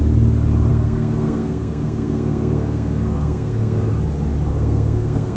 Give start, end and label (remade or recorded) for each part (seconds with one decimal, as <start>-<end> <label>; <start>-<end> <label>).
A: 0.0-0.7 recorded; 0.7-3.9 remade; 3.9-4.5 recorded; 4.5-5.4 remade